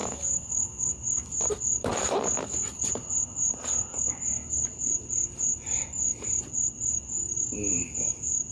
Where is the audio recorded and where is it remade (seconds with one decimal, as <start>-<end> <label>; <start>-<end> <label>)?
0.0-0.9 remade; 0.9-8.5 recorded